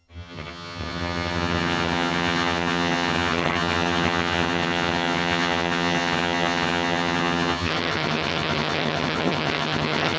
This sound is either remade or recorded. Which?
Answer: remade